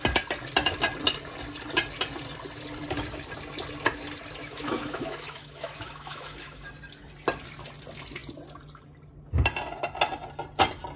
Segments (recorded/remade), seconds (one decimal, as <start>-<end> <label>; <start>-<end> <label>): 0.0-4.4 recorded; 4.4-6.7 remade; 6.7-11.0 recorded